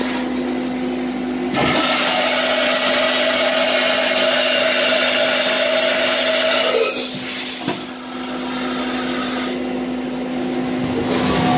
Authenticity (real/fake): real